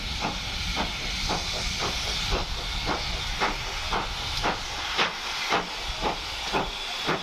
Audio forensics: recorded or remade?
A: recorded